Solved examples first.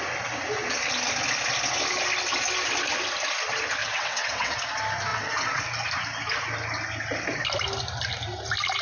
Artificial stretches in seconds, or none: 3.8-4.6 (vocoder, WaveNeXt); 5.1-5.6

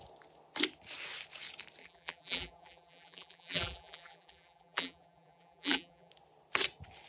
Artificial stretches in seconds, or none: 1.8-6.1 (vocoder, BigVGAN v2)

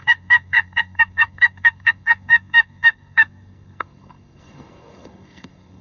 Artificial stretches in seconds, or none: 0.0-5.8 (codec, SNAC)

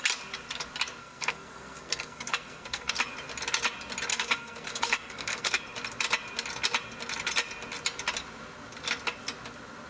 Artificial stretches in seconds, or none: 1.0-2.9 (codec, SNAC); 4.1-5.6

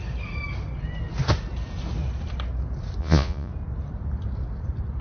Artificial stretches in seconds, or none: 3.0-3.5 (vocoder, Vocos)